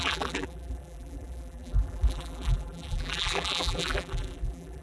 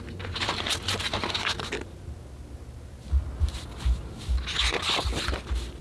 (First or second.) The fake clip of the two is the first